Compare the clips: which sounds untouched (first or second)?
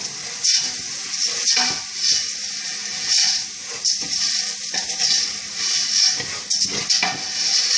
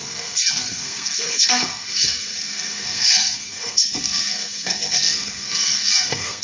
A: first